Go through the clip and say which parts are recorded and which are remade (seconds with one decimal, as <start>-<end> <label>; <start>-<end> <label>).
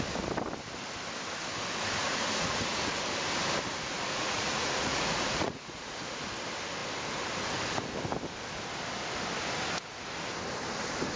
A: 0.0-2.0 recorded; 2.0-2.9 remade; 2.9-3.7 recorded; 3.7-6.2 remade; 6.2-11.2 recorded